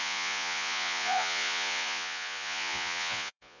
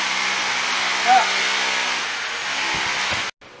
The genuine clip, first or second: second